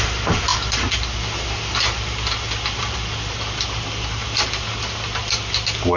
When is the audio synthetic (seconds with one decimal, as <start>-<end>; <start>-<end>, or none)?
none

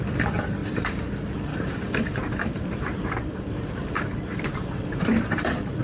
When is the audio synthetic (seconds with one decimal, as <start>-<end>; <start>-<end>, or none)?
0.6-1.1; 1.5-5.0